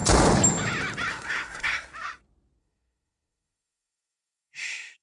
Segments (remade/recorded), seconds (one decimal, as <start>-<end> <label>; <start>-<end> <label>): 0.0-1.1 recorded; 1.1-1.9 remade; 1.9-2.6 recorded; 2.6-5.0 remade